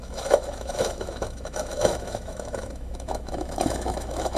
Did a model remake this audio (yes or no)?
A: yes